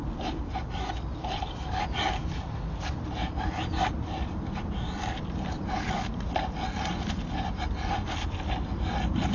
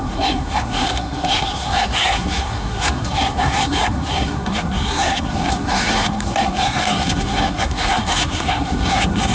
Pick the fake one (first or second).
second